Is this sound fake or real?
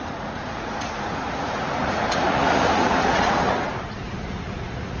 fake